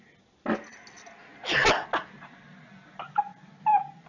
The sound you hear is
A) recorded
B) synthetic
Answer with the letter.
A